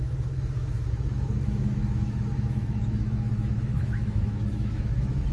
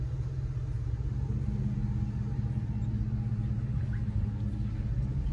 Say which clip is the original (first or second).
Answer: second